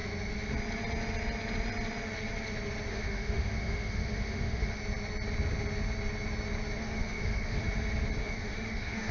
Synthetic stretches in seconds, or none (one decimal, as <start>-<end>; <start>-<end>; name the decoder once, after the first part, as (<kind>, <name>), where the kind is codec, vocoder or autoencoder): 2.9-4.8 (autoencoder, DAC-VAE); 6.8-7.6; 8.2-9.1